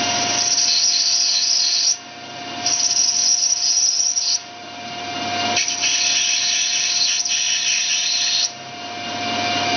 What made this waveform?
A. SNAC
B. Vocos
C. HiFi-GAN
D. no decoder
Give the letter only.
D